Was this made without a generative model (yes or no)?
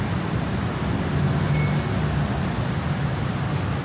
yes